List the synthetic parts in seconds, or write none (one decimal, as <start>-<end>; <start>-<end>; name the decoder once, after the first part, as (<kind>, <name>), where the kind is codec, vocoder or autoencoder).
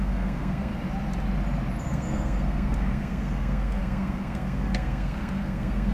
0.0-0.7 (codec, SNAC); 1.8-5.9